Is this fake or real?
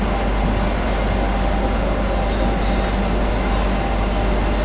real